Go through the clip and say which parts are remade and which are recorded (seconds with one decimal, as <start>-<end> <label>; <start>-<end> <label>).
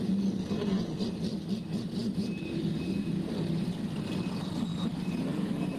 0.0-2.0 recorded; 2.0-2.6 remade; 2.6-4.7 recorded; 4.7-5.8 remade